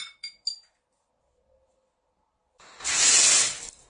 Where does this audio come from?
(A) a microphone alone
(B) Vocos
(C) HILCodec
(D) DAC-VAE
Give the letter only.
A